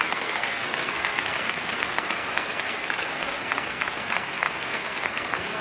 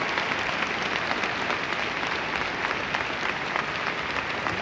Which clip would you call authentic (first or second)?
second